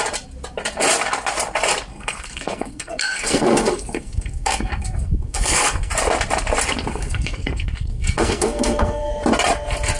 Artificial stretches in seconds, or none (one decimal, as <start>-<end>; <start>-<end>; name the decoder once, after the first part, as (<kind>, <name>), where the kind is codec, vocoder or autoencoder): 1.9-5.9 (codec, SNAC); 6.9-9.1